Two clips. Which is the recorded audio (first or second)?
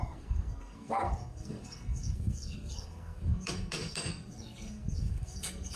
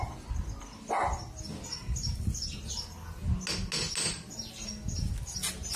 second